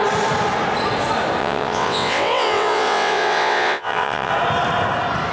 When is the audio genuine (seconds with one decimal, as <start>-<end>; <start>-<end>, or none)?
0.0-1.4; 4.3-5.3